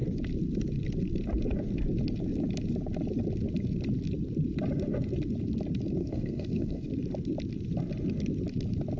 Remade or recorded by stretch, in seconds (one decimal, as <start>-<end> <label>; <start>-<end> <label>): 0.0-6.0 recorded; 6.0-6.9 remade; 6.9-9.0 recorded